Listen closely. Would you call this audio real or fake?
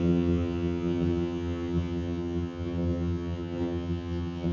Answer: fake